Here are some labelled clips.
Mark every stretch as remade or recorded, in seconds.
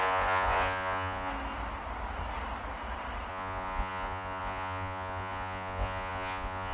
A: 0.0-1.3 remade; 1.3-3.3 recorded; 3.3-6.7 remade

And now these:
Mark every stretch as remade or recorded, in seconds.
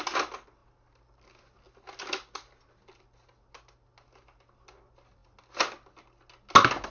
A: 0.0-6.9 recorded